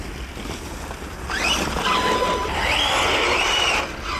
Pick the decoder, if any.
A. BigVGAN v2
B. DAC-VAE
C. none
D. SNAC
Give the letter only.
C